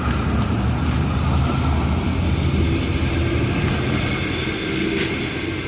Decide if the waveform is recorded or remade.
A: recorded